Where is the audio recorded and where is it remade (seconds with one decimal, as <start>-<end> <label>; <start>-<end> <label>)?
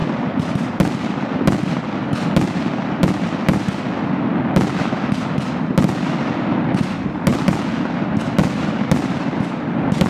0.0-10.1 recorded